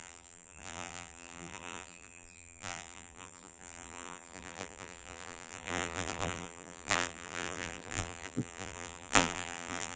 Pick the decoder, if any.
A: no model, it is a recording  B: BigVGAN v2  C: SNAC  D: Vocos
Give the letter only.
B